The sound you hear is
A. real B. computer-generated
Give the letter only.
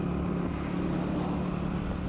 A